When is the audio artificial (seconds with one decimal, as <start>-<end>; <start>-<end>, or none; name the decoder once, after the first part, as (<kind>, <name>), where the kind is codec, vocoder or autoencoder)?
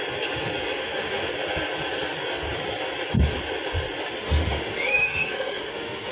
0.8-1.3 (autoencoder, DAC-VAE); 4.2-6.1